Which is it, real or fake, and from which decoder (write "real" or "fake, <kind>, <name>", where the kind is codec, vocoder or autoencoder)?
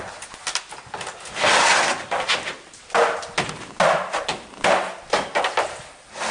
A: real